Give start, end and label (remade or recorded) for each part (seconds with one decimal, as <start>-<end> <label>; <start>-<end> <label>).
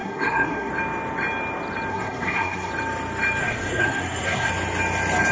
0.0-0.7 remade; 0.7-1.9 recorded; 1.9-2.7 remade; 2.7-3.4 recorded; 3.4-4.5 remade; 4.5-5.3 recorded